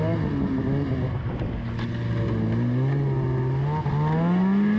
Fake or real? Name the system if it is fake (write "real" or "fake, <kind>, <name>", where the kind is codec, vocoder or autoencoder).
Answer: real